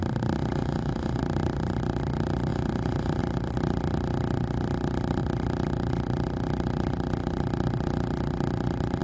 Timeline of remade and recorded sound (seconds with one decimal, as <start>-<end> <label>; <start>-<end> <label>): 0.0-0.4 recorded; 0.4-1.2 remade; 1.2-2.5 recorded; 2.5-3.2 remade; 3.2-9.0 recorded